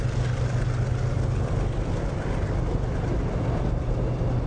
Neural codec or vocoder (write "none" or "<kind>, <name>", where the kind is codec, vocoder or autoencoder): none